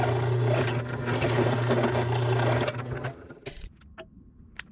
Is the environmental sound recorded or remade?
recorded